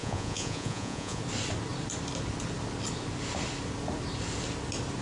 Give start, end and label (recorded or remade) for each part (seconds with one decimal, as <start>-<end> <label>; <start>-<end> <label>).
0.0-1.2 remade; 1.2-5.0 recorded